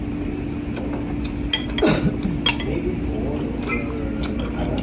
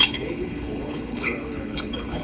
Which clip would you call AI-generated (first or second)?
second